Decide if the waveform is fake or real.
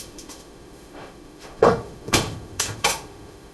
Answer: fake